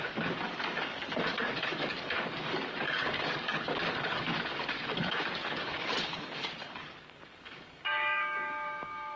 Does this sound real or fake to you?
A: fake